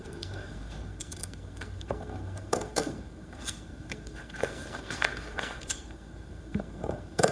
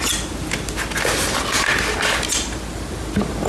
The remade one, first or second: first